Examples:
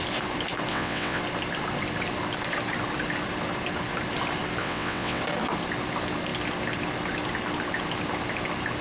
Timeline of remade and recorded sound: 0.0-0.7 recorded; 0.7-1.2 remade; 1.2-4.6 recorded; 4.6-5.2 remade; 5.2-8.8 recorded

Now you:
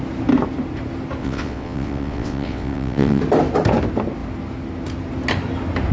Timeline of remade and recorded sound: 0.0-1.2 recorded; 1.2-3.2 remade; 3.2-5.9 recorded

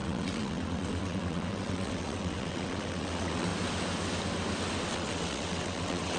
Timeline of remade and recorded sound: 0.0-3.5 remade; 3.5-4.9 recorded; 4.9-6.2 remade